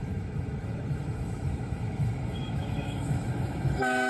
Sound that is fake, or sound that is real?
fake